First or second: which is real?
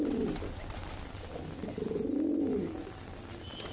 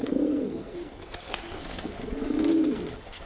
first